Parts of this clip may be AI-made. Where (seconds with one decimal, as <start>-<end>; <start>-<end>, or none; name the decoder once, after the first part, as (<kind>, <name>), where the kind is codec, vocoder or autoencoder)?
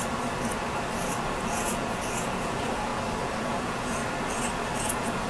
1.4-2.9 (vocoder, Vocos); 3.4-4.0; 4.8-5.3